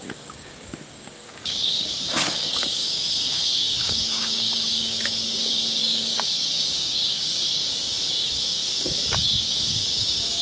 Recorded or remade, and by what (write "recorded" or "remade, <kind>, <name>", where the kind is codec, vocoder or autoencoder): remade, codec, DAC